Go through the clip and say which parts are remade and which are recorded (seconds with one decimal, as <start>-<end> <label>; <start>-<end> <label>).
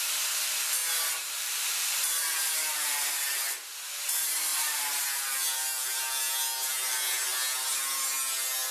0.0-0.8 recorded; 0.8-2.9 remade; 2.9-4.5 recorded; 4.5-6.2 remade; 6.2-8.7 recorded